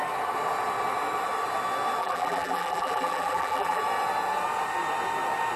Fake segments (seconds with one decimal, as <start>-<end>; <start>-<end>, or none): 2.0-3.8